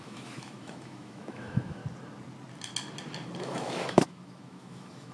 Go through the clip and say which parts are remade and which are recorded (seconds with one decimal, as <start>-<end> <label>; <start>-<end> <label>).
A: 0.0-1.8 remade; 1.8-3.4 recorded; 3.4-5.1 remade